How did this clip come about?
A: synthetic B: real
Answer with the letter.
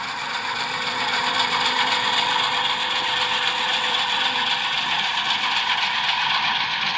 A